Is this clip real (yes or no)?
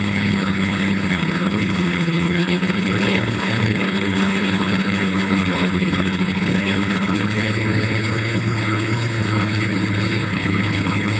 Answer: no